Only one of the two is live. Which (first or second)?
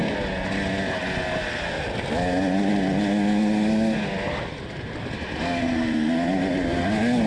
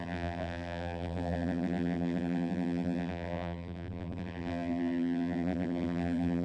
first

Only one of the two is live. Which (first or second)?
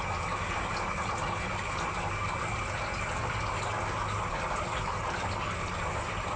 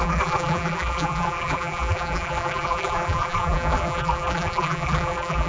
first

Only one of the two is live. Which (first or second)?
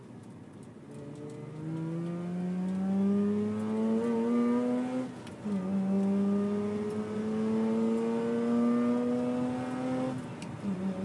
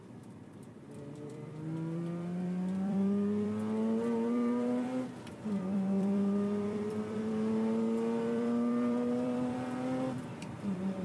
first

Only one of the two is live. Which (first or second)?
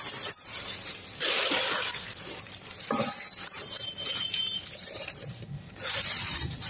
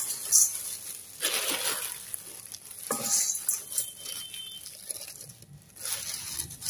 second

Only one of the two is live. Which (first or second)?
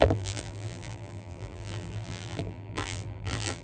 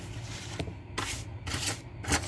second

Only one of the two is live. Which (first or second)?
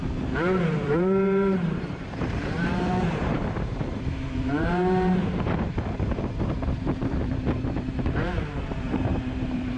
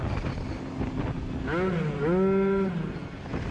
second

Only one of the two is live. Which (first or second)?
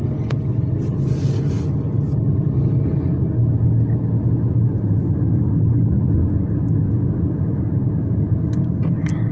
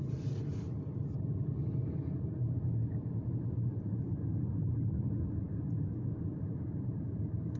first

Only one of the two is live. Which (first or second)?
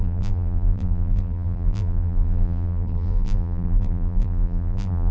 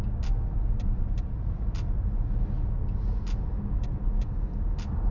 second